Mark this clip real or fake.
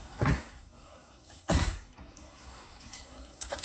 fake